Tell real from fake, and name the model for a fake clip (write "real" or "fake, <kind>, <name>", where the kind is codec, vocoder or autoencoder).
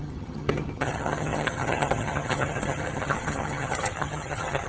fake, vocoder, HiFi-GAN